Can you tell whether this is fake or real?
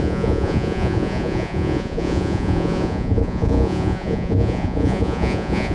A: fake